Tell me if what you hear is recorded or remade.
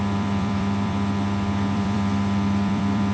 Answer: remade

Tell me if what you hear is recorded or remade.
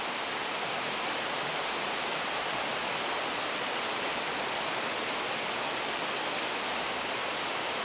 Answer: recorded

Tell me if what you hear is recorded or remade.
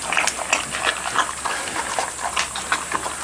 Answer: recorded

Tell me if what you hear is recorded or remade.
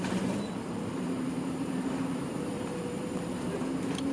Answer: remade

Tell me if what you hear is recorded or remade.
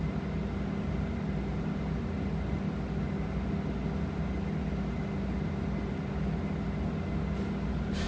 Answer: recorded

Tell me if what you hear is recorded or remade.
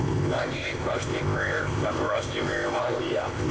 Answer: remade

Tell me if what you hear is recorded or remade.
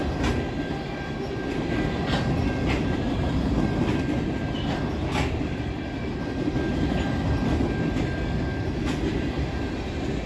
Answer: recorded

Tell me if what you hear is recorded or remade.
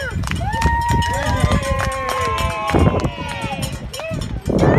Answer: recorded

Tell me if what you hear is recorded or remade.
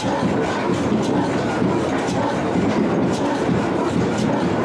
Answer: recorded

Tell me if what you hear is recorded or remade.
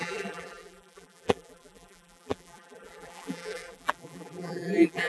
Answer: remade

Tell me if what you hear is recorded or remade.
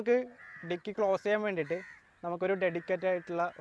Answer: remade